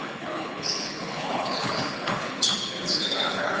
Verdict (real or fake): fake